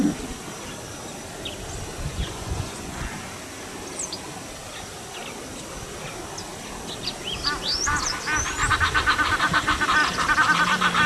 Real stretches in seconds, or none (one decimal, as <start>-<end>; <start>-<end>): 0.0-2.1; 3.1-11.1